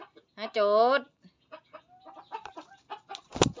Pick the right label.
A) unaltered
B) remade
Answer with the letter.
A